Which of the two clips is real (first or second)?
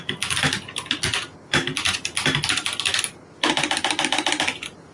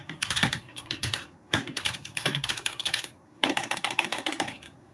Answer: first